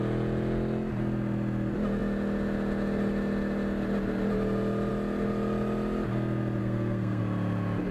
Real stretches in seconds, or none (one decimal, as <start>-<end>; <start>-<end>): 0.0-6.6; 7.2-7.9